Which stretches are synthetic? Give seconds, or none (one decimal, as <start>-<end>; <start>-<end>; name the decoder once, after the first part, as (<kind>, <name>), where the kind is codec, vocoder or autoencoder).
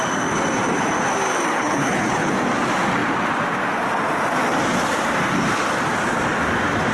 1.5-2.3 (codec, HILCodec)